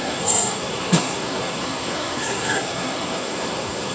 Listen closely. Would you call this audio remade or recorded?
remade